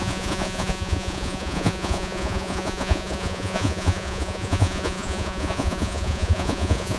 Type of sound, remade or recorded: remade